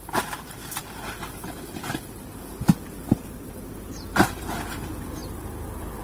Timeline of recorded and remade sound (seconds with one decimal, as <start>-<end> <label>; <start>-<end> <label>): 0.0-0.8 recorded; 0.8-4.4 remade; 4.4-6.0 recorded